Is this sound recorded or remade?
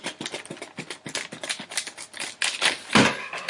recorded